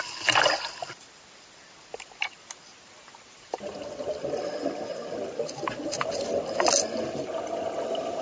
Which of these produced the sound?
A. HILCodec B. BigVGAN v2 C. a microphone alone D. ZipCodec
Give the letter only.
C